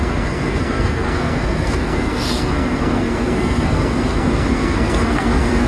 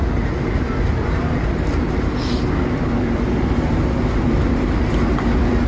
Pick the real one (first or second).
second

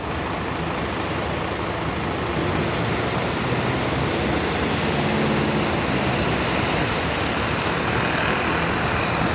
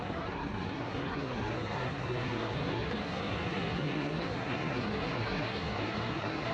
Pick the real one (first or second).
first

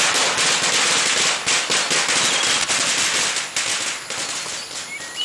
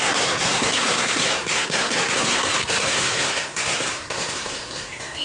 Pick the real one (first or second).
first